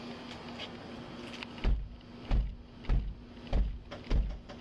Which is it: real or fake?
real